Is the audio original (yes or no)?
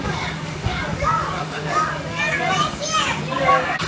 no